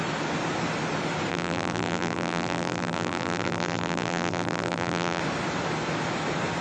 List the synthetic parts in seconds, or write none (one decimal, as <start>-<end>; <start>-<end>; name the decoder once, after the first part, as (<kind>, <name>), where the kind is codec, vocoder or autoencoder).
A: 1.3-5.2 (vocoder, BigVGAN v2)